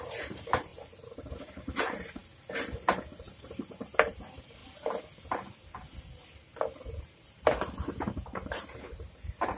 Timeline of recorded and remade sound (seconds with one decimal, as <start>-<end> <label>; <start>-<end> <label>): 0.0-0.7 remade; 0.7-1.3 recorded; 1.3-4.6 remade; 4.6-7.0 recorded; 7.0-9.6 remade